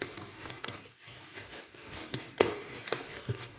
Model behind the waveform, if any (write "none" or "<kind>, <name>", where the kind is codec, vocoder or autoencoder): codec, DAC